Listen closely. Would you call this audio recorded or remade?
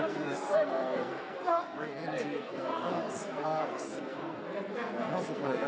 remade